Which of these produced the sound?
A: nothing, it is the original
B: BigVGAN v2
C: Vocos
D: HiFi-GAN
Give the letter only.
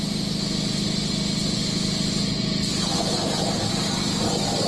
A